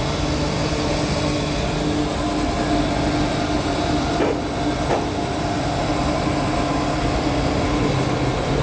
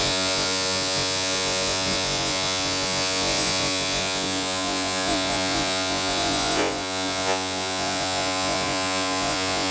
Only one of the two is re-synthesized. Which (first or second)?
second